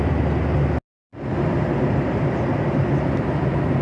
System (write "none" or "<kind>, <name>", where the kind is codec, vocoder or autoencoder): none